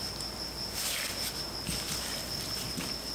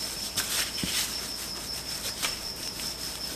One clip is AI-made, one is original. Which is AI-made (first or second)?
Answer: second